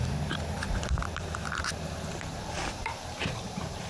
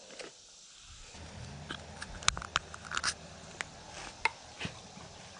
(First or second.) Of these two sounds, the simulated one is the first